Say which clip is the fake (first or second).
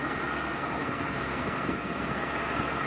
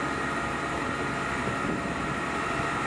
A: first